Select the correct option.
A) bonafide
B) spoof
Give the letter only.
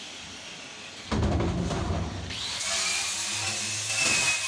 A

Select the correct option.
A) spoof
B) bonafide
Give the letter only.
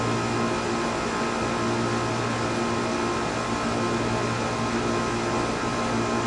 B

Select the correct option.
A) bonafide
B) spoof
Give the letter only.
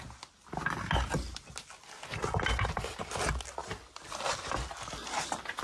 A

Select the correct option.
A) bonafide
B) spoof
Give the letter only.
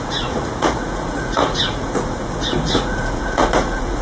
B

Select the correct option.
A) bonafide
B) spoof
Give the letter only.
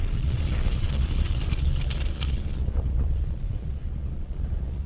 B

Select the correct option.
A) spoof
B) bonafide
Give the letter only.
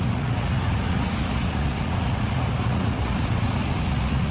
A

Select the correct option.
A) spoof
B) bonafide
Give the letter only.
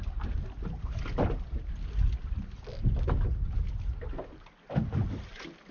B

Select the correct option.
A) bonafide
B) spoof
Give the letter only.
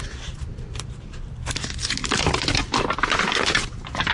A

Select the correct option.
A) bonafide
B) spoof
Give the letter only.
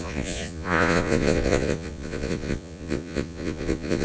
B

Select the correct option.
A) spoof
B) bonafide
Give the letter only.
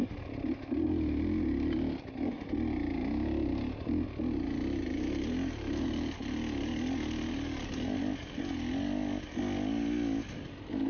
B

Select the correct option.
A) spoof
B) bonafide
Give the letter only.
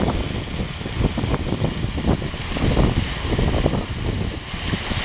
B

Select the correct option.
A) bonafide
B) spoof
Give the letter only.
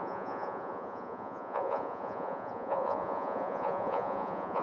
B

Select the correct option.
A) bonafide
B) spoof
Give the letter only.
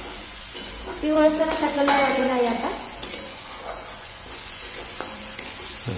B